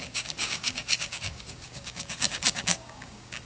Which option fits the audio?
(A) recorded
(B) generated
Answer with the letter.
B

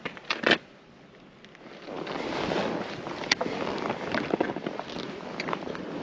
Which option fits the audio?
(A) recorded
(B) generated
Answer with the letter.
A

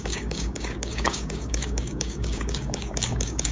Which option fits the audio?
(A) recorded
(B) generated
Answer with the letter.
B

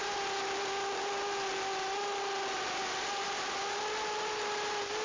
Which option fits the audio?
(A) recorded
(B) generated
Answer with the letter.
A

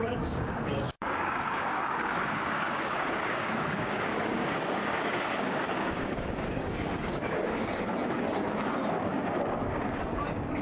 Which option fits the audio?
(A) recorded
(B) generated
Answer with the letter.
B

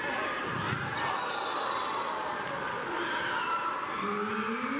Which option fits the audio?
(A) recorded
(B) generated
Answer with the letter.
A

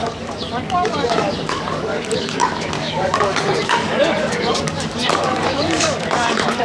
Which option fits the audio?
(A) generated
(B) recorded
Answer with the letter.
A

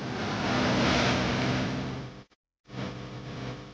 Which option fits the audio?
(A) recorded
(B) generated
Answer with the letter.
A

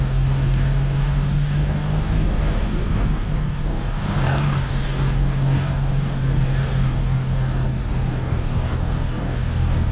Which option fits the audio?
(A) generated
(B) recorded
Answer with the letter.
A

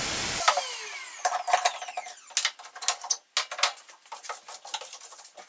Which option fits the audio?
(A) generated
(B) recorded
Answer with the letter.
B